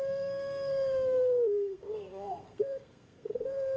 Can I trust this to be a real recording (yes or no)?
no